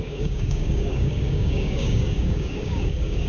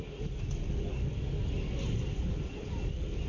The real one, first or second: second